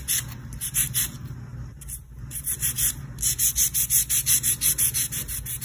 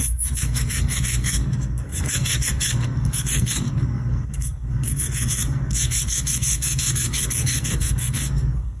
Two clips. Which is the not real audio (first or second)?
second